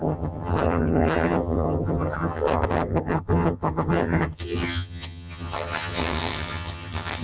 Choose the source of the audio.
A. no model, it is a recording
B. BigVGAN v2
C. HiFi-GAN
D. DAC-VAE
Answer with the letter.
C